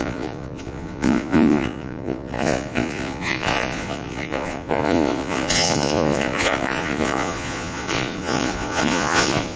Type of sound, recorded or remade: remade